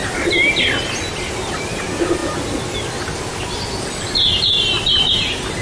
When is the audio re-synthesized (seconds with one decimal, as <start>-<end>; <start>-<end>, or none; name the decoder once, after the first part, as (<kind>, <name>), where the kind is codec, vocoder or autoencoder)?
none